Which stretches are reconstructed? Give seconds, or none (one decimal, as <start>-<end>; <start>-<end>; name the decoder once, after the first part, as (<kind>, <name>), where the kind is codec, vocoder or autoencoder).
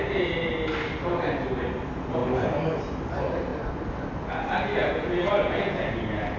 4.8-5.8 (vocoder, Vocos)